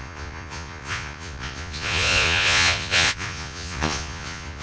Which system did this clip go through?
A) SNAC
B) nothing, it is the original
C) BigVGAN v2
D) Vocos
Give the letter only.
D